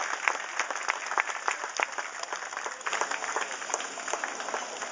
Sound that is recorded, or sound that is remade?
recorded